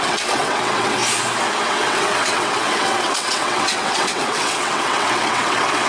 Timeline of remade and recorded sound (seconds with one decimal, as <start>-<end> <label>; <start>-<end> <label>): 0.0-1.0 remade; 1.0-1.7 recorded; 1.7-5.9 remade